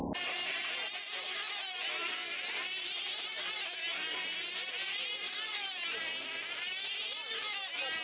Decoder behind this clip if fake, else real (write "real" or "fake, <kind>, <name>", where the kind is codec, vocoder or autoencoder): real